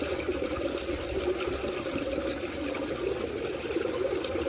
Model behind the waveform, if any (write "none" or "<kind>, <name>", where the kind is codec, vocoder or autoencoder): none